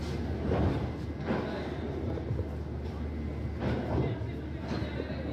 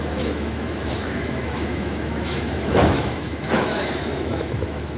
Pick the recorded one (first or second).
first